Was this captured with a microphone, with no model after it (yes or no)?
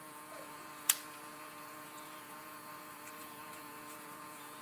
no